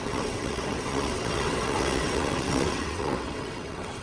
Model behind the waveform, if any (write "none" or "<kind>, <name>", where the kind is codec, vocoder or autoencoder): vocoder, WaveNeXt